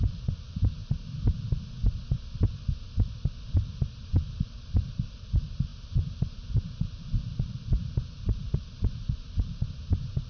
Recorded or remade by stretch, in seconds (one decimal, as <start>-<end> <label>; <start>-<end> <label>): 0.0-0.8 remade; 0.8-4.9 recorded; 4.9-10.3 remade